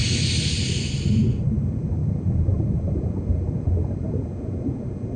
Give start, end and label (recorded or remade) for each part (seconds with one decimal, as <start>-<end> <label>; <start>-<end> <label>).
0.0-1.1 recorded; 1.1-5.2 remade

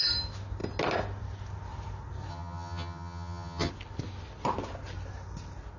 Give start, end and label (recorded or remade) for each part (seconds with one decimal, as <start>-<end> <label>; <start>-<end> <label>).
0.0-2.3 recorded; 2.3-3.7 remade; 3.7-5.8 recorded

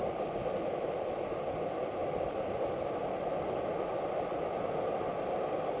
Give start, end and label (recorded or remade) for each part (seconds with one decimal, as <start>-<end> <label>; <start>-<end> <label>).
0.0-0.4 remade; 0.4-1.5 recorded; 1.5-5.8 remade

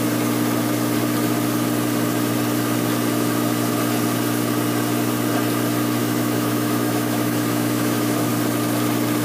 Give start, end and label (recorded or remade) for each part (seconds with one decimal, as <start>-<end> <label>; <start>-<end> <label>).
0.0-6.0 recorded; 6.0-8.3 remade; 8.3-9.2 recorded